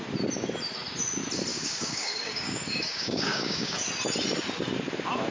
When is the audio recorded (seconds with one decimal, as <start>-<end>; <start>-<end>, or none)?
0.0-1.5; 3.8-5.3